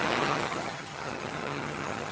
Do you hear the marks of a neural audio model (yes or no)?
yes